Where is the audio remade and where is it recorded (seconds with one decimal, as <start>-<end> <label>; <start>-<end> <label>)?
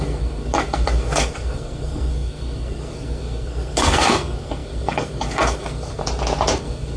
0.0-6.0 remade; 6.0-6.6 recorded; 6.6-7.0 remade